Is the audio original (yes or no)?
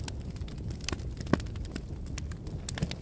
yes